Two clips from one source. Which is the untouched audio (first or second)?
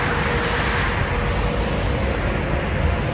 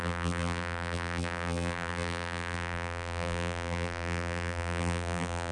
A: first